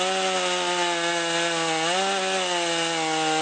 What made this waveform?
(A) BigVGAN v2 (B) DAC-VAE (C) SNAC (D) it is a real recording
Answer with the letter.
D